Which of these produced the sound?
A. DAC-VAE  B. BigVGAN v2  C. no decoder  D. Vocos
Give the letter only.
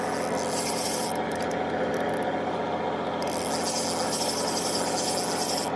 C